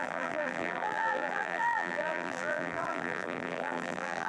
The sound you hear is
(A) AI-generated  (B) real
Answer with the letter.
A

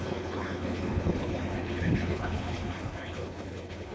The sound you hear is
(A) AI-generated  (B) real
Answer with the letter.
A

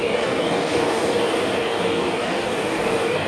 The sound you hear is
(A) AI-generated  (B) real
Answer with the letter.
A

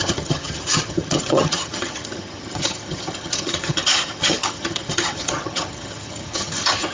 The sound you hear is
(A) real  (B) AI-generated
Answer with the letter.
B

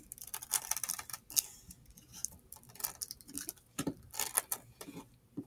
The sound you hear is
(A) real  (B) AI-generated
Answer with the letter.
A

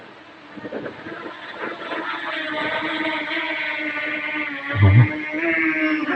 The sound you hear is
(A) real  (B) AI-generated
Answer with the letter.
A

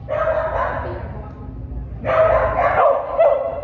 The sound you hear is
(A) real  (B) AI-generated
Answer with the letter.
A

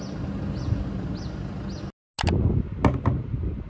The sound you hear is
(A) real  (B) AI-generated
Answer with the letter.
A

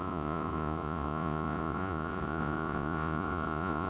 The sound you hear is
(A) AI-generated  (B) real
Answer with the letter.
A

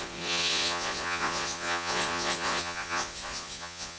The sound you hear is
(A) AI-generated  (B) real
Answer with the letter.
A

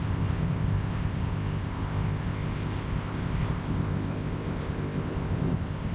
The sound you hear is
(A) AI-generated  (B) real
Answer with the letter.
A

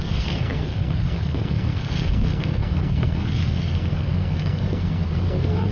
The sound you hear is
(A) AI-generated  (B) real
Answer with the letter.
A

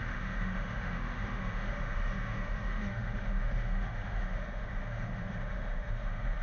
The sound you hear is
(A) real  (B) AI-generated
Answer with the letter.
B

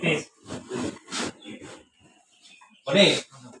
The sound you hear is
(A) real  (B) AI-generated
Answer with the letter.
A